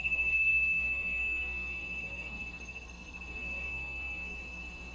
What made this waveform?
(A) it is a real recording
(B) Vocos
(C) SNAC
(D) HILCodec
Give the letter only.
C